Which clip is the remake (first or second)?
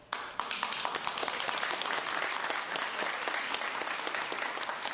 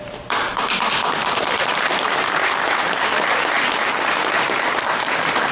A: second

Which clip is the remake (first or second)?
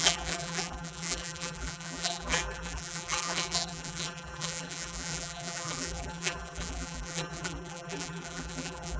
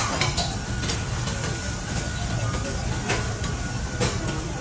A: first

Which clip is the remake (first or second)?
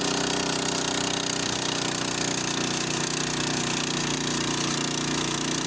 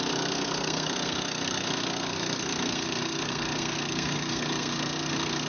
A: second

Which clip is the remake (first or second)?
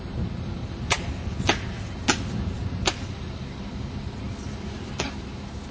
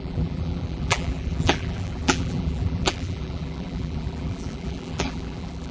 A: second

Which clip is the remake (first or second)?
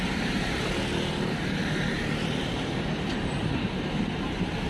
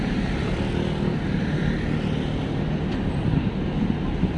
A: first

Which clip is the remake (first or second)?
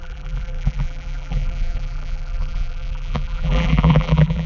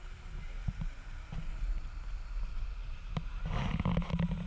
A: first